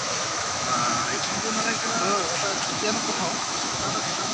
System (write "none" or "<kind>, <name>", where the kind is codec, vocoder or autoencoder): autoencoder, DAC-VAE